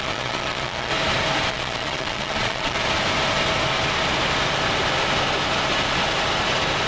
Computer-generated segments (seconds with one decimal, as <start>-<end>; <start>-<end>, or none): 0.0-0.9; 1.5-2.8